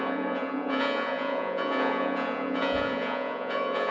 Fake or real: fake